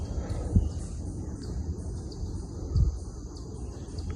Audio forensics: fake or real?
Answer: real